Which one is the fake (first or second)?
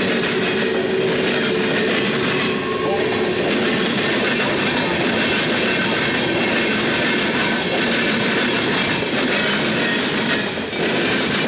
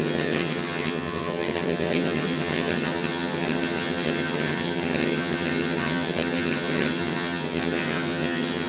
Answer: second